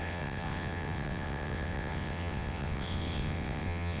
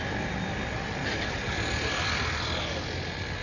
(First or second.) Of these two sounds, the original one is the second